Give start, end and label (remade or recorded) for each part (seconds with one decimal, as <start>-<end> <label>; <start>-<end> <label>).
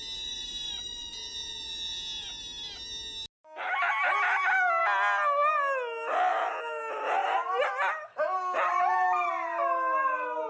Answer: 0.0-10.5 recorded